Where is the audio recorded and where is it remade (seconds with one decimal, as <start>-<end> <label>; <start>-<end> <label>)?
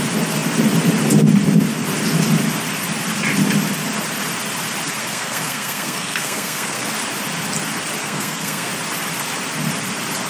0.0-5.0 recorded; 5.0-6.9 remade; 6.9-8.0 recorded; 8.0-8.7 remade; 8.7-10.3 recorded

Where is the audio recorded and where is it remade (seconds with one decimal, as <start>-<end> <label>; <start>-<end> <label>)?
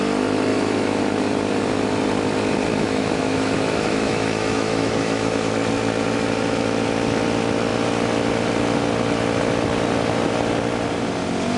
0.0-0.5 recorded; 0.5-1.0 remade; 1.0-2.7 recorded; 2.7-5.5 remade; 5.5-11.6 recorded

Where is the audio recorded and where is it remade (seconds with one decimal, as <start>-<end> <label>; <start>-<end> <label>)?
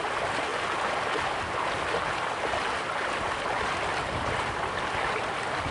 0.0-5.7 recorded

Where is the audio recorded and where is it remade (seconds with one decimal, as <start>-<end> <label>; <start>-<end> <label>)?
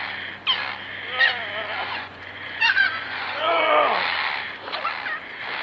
0.0-1.8 recorded; 1.8-3.7 remade; 3.7-5.6 recorded